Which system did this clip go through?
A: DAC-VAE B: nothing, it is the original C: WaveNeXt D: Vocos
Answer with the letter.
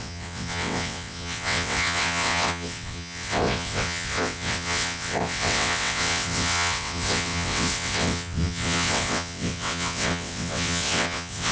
C